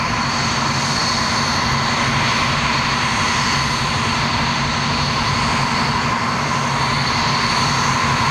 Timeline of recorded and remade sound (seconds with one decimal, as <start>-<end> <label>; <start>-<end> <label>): 0.0-8.3 recorded